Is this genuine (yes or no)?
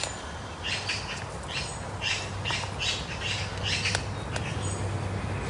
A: yes